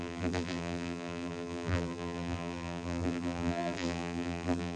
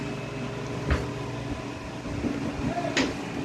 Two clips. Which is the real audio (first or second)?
second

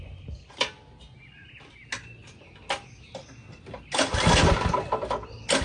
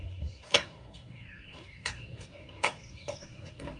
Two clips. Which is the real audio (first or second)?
first